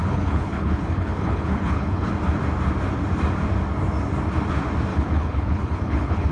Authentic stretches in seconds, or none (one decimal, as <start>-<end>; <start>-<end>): 2.1-4.9